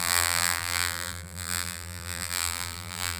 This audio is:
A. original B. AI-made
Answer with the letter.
B